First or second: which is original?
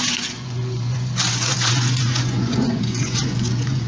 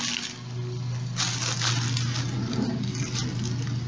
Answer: second